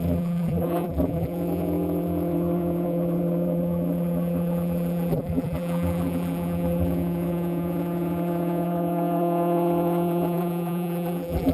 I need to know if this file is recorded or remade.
remade